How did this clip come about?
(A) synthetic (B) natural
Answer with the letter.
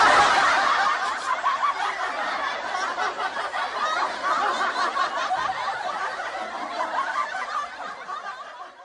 B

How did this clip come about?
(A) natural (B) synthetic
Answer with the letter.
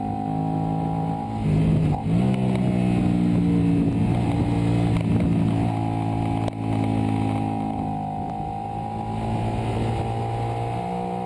A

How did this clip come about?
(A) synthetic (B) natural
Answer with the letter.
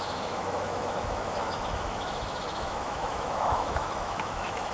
A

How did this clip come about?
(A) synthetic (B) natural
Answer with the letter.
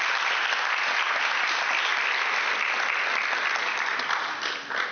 B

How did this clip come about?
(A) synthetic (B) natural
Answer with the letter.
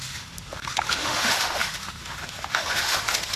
A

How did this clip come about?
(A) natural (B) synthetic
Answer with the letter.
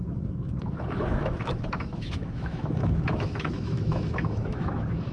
B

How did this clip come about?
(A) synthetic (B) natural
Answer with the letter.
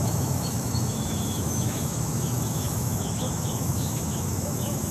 A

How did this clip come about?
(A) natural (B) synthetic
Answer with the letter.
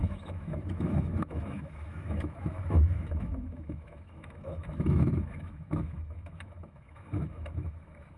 B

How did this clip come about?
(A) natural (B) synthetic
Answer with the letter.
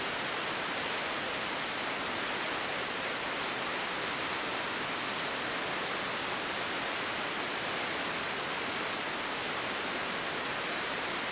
A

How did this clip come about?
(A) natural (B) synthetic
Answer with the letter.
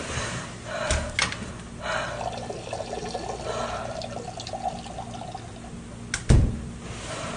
A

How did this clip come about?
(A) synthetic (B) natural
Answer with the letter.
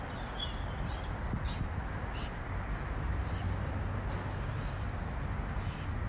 B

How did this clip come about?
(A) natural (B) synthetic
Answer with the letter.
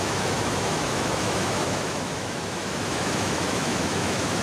B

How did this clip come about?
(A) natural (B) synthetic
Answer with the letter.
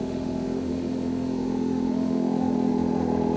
B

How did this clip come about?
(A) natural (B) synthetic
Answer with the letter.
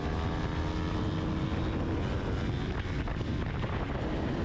A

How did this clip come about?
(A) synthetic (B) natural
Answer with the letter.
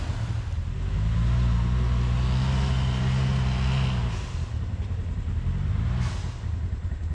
B